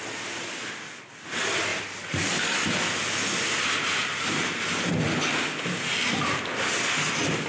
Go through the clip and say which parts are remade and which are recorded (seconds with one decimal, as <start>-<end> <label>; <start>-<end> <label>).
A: 0.0-1.7 recorded; 1.7-3.0 remade; 3.0-7.5 recorded